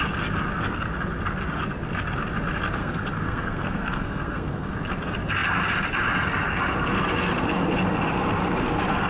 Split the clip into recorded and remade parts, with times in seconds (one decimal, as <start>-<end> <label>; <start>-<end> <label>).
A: 0.0-2.8 recorded; 2.8-4.7 remade; 4.7-9.1 recorded